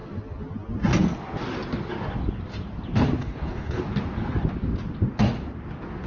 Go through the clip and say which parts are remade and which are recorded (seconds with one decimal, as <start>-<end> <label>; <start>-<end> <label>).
0.0-3.2 recorded; 3.2-3.8 remade; 3.8-6.1 recorded